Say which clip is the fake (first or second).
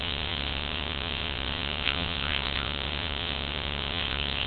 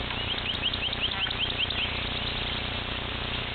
first